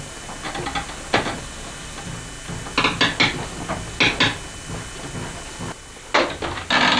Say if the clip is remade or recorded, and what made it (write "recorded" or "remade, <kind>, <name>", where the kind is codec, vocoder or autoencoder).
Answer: recorded